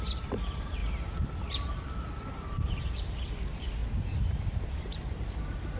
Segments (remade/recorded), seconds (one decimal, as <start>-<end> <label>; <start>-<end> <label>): 0.0-0.8 remade; 0.8-2.3 recorded; 2.3-3.8 remade; 3.8-4.3 recorded; 4.3-5.8 remade